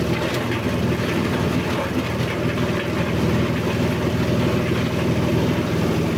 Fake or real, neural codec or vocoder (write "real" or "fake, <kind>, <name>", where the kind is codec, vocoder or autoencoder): real